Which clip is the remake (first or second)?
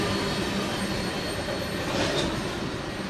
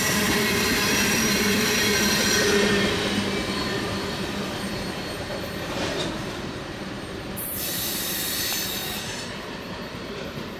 second